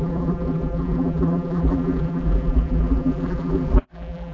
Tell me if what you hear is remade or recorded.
remade